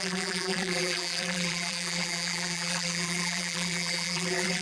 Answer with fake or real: fake